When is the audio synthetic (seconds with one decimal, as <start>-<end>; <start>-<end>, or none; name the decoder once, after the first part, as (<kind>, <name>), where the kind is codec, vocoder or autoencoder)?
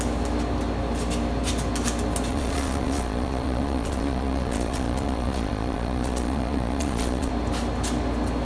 2.3-7.3 (vocoder, Vocos)